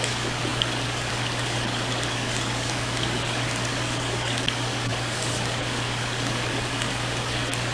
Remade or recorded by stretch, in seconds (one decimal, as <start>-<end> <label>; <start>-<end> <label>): 0.0-7.7 remade